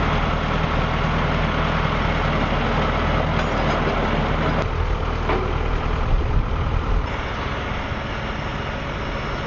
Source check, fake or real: real